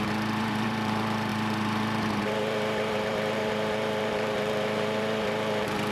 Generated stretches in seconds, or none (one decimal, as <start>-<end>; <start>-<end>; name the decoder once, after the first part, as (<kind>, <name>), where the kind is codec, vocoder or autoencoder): 0.0-5.9 (vocoder, BigVGAN v2)